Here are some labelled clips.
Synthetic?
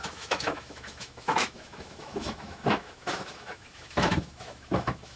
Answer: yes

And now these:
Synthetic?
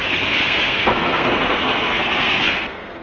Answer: yes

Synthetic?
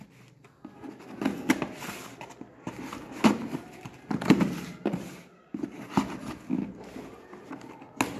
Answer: no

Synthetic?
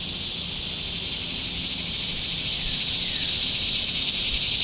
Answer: no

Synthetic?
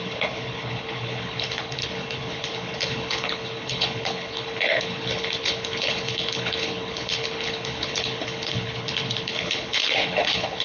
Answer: yes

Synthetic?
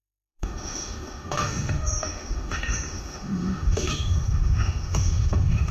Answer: yes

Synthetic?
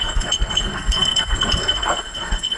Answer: yes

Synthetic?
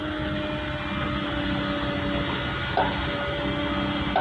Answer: no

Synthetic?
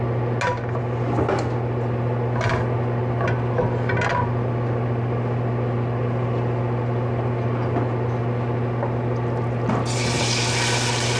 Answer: no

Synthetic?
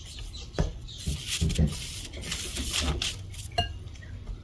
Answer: no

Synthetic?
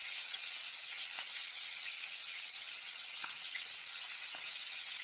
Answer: yes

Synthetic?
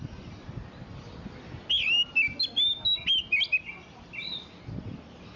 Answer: no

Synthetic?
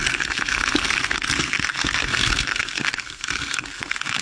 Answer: yes